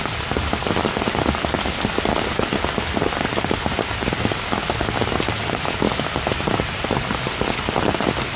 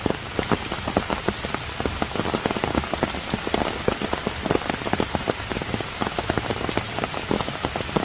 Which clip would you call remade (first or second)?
second